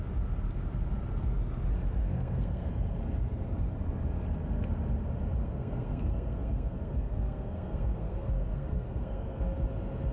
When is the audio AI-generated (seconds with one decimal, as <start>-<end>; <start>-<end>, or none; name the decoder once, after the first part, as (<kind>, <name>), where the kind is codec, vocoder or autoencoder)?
2.0-2.7 (codec, SNAC); 5.4-9.6